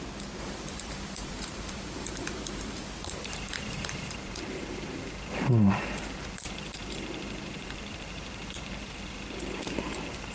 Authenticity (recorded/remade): remade